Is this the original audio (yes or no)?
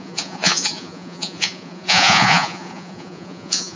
no